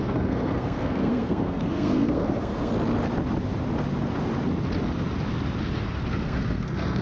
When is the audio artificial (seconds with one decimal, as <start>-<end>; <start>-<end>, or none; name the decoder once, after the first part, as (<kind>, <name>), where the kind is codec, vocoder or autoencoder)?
0.0-2.7 (codec, SNAC); 6.1-7.0